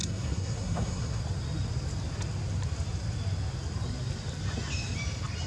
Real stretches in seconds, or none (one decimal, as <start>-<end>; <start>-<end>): 1.2-5.5